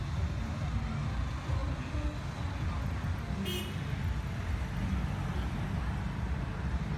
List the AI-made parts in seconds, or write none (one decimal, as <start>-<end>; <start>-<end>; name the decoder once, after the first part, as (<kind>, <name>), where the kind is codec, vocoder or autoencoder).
none